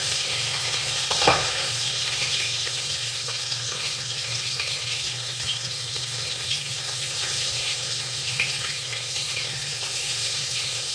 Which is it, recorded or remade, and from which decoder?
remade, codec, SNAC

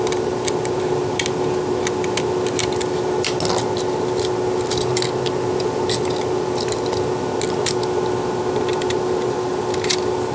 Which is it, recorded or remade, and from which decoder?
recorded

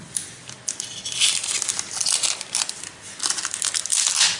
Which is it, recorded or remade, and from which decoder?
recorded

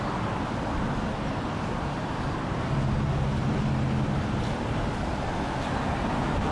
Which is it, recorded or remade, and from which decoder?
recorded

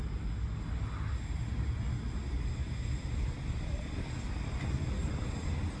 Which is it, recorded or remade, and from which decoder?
recorded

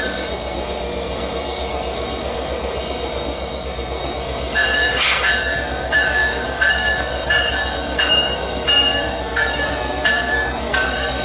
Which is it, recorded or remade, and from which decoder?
remade, codec, SNAC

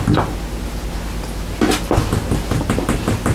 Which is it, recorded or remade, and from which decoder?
recorded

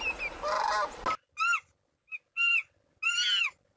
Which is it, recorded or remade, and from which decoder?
recorded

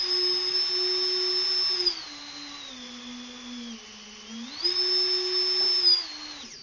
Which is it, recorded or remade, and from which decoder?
recorded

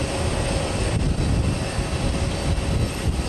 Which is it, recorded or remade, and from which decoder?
recorded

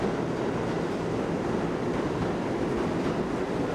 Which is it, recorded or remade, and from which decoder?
recorded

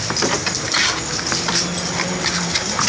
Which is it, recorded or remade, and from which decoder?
recorded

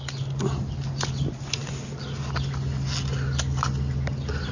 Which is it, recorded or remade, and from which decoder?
recorded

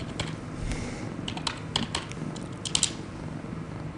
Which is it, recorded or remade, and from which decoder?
recorded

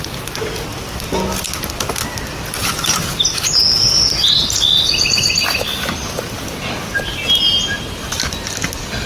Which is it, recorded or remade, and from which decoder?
recorded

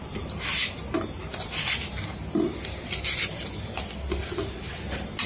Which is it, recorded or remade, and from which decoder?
recorded